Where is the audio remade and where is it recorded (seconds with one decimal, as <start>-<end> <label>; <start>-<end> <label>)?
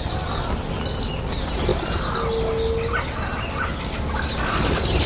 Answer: 0.0-5.1 recorded